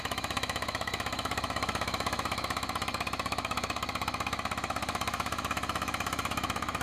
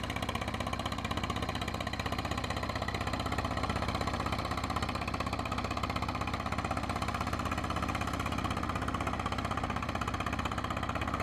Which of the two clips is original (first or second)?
second